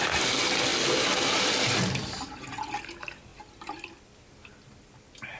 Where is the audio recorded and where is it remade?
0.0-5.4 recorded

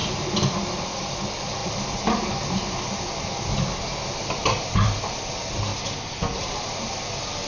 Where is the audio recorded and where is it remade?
0.0-1.6 recorded; 1.6-2.9 remade; 2.9-4.4 recorded; 4.4-5.1 remade; 5.1-5.7 recorded; 5.7-6.8 remade; 6.8-7.5 recorded